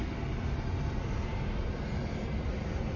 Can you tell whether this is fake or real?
real